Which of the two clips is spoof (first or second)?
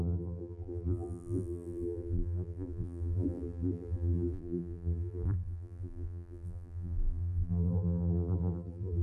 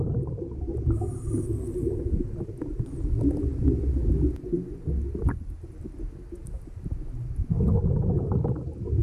first